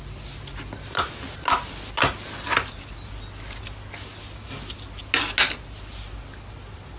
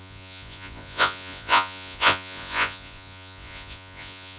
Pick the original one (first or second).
first